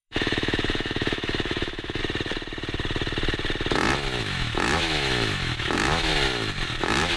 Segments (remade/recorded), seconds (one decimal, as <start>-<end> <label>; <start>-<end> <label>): 0.0-2.0 remade; 2.0-4.2 recorded; 4.2-6.1 remade; 6.1-6.8 recorded; 6.8-7.2 remade